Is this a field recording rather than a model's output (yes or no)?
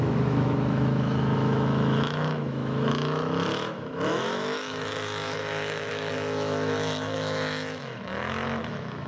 no